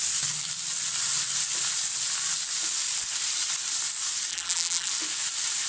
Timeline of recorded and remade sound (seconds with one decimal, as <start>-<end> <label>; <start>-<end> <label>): 0.0-4.3 recorded; 4.3-4.9 remade; 4.9-5.7 recorded